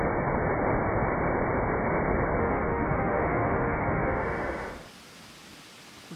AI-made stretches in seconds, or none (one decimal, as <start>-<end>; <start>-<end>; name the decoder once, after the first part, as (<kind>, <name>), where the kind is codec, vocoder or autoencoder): 2.4-4.7 (autoencoder, DAC-VAE)